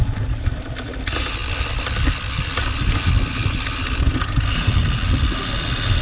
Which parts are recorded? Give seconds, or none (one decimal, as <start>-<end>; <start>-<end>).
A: 0.0-1.4; 3.1-6.0